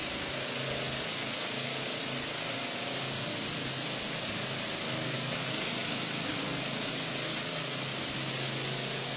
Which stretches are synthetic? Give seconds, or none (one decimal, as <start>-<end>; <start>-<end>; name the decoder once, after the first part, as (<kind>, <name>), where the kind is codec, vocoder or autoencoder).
none